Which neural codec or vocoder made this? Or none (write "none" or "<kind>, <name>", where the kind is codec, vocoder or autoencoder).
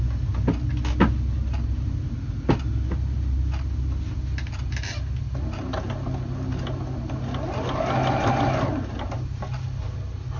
none